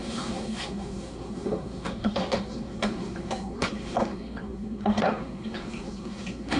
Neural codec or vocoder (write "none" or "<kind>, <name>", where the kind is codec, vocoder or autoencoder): codec, SNAC